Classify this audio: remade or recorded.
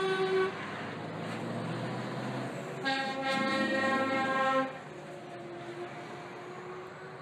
recorded